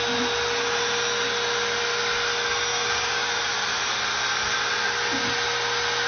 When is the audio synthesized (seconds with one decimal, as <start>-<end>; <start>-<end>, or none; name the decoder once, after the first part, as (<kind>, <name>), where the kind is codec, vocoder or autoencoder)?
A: 2.7-3.4 (codec, DAC)

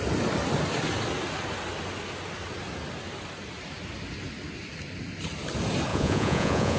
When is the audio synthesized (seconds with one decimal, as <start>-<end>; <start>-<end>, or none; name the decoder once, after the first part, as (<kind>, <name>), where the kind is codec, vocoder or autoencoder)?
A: 5.9-6.8 (vocoder, Vocos)

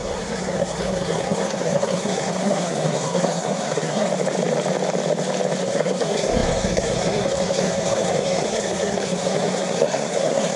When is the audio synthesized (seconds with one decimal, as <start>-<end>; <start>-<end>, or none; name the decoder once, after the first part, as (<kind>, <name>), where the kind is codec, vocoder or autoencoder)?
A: 0.0-4.1 (codec, SNAC); 5.6-10.6

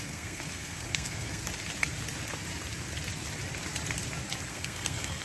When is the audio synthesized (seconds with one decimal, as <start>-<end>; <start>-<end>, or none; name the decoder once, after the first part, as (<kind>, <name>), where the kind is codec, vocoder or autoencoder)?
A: 0.0-1.4 (codec, SNAC); 4.5-5.2